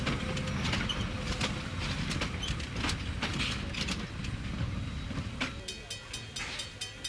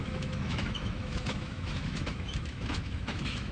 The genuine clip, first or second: first